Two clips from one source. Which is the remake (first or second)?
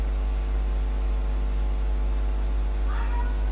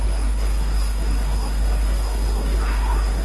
second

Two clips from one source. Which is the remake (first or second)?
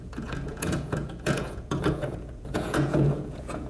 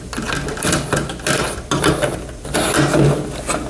first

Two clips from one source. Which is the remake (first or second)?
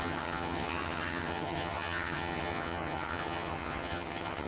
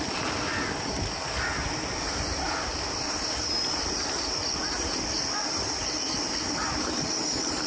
first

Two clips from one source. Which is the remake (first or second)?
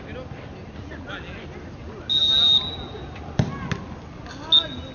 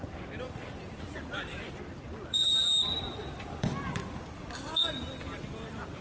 second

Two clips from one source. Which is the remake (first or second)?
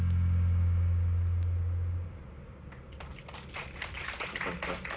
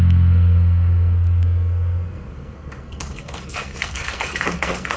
second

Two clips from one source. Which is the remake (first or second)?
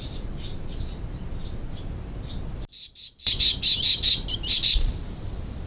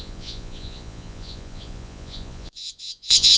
second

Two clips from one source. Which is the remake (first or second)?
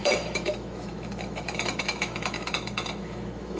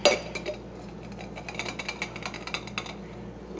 first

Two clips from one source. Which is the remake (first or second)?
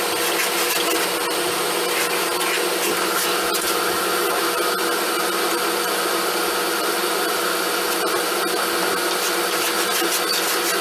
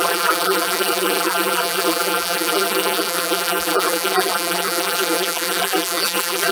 second